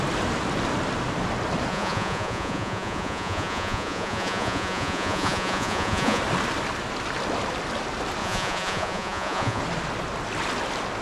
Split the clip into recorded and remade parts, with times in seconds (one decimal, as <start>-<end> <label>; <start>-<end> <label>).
0.0-1.7 recorded; 1.7-6.2 remade; 6.2-8.2 recorded; 8.2-9.6 remade; 9.6-11.0 recorded